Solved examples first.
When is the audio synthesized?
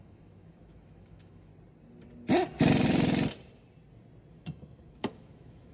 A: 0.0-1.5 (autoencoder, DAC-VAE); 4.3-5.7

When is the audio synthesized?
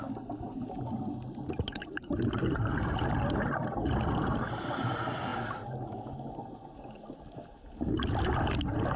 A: 1.7-2.8 (vocoder, BigVGAN v2)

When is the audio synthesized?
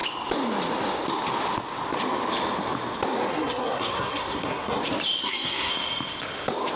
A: 3.3-4.8 (codec, SNAC); 5.2-5.7